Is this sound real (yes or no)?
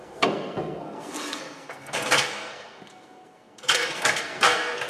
no